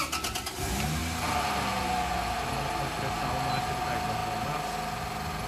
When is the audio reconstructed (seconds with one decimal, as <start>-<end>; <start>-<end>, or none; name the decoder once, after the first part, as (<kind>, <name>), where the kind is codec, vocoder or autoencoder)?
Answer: none